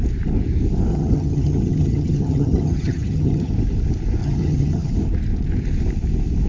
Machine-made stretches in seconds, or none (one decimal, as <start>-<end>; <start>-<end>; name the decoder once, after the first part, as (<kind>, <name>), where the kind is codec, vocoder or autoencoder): 0.9-3.5 (vocoder, HiFi-GAN); 4.2-4.9